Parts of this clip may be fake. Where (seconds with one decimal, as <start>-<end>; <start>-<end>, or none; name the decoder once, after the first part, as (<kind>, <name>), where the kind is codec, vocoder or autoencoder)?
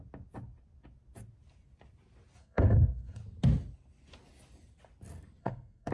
2.4-3.2 (codec, SNAC); 5.4-5.9